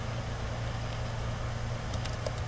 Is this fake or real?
real